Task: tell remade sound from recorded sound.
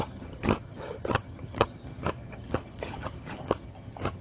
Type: remade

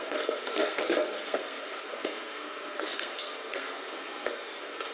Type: remade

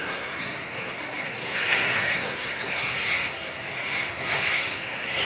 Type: remade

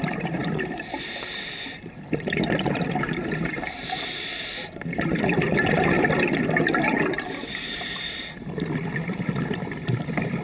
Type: remade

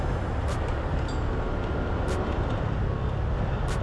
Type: recorded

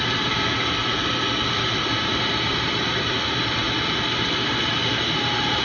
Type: recorded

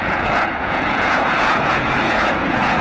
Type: remade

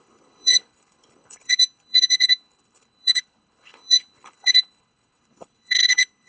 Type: remade